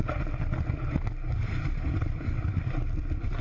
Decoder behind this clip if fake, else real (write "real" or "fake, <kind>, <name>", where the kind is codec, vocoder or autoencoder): fake, vocoder, BigVGAN v2